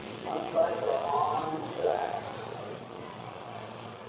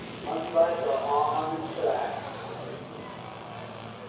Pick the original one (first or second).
second